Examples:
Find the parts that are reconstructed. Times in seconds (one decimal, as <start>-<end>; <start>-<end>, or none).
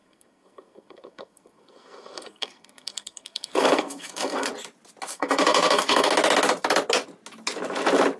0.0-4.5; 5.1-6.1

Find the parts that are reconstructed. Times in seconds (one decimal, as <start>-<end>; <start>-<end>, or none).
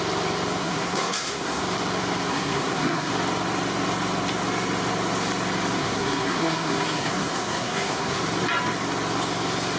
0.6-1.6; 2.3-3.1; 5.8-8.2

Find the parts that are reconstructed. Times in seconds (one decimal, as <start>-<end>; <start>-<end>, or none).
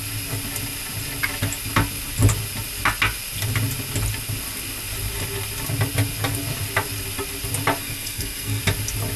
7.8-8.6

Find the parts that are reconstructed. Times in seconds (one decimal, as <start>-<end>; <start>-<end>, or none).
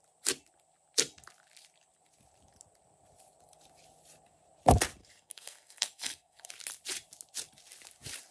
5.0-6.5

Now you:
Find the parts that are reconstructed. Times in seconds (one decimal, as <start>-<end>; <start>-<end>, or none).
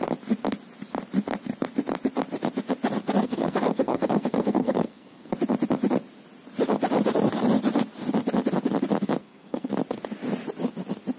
3.2-5.3; 9.2-9.7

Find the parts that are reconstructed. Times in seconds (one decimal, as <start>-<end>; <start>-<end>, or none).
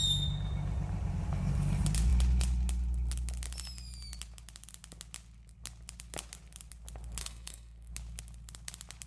7.2-7.9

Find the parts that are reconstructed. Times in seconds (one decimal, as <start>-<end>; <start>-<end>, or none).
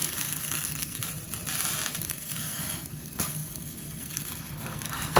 0.0-1.0; 2.0-5.2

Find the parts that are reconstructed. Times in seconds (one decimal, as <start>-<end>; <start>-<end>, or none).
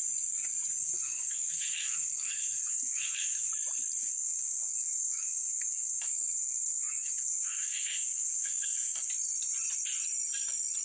0.8-3.5; 4.0-9.1